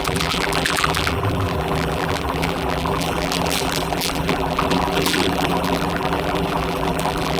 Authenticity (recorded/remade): remade